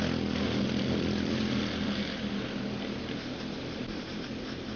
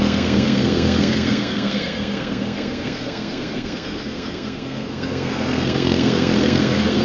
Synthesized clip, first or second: second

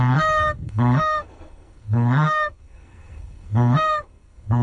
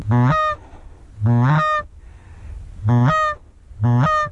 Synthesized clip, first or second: first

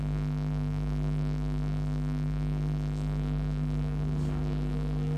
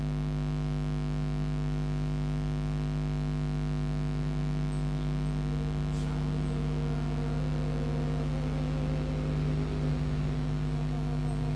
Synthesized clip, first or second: first